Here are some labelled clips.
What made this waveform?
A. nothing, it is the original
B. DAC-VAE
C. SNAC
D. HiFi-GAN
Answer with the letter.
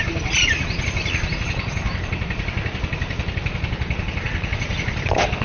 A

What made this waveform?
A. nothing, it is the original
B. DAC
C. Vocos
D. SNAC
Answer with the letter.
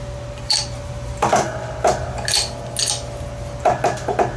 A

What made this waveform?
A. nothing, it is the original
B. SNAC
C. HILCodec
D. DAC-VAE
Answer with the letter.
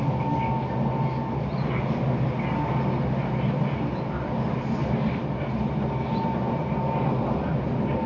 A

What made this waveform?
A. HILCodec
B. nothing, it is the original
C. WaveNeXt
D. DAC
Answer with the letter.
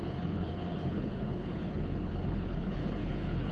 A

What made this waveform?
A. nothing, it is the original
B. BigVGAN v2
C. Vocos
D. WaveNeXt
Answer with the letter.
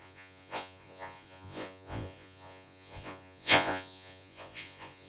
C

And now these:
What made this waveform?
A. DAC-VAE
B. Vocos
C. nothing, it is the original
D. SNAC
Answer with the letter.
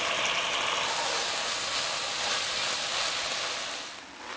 C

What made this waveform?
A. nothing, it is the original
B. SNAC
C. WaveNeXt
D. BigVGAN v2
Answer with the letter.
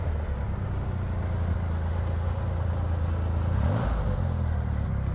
A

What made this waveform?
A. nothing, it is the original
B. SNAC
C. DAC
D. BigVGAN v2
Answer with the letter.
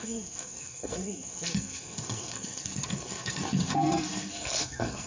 B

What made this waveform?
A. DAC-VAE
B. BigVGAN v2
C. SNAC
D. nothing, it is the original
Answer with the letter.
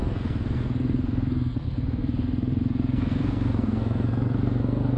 C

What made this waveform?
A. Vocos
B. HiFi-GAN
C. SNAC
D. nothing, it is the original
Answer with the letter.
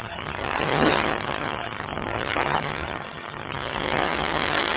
B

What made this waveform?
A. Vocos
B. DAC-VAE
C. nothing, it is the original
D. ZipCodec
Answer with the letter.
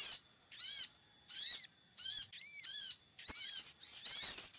C